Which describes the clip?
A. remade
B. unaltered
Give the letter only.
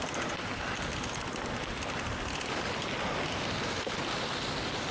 B